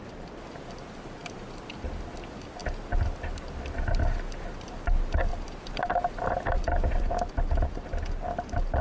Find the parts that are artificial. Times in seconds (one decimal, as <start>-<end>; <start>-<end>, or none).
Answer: 5.3-7.3